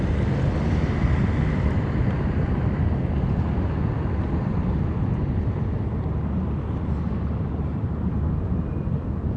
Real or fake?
real